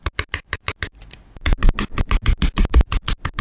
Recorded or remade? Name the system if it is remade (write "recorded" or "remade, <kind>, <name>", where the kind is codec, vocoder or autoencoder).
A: recorded